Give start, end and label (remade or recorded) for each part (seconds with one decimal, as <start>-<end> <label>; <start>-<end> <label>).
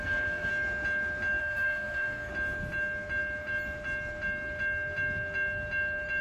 0.0-0.5 remade; 0.5-1.4 recorded; 1.4-2.3 remade; 2.3-6.2 recorded